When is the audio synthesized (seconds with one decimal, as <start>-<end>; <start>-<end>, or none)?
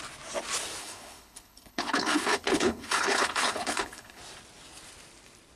0.8-4.2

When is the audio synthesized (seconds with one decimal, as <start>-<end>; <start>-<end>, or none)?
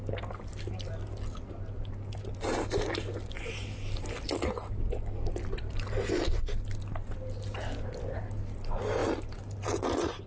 none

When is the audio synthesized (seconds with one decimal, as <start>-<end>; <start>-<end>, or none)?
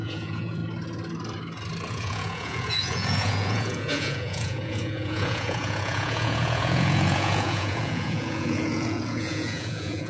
0.0-0.6; 1.9-10.1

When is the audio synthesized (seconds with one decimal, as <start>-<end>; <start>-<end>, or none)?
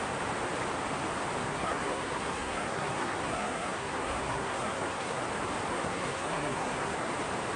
1.4-5.2; 5.7-7.1